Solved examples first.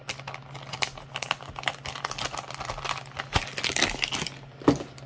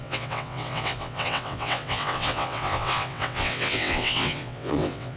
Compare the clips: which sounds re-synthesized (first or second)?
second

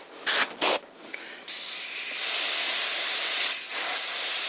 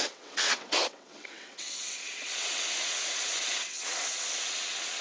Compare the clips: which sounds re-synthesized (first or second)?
second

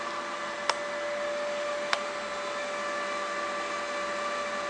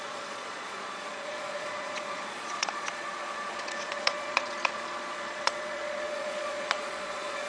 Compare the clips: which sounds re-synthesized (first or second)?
second